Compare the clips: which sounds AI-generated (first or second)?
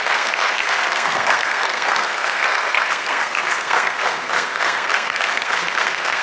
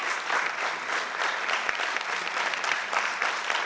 first